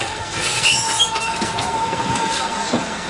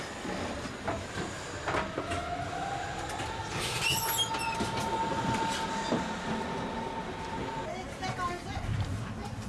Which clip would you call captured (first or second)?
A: second